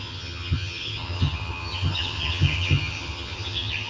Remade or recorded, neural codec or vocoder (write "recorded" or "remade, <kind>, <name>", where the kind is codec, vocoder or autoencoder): remade, vocoder, HiFi-GAN